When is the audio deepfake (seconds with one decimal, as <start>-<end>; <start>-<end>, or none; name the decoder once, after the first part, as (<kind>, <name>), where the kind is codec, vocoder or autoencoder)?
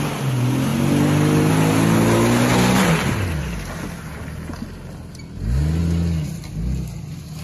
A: none